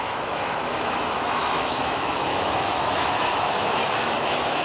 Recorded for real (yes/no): no